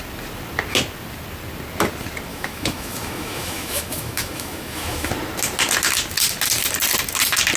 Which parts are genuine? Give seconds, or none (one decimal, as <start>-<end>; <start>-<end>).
0.0-2.3; 5.1-7.6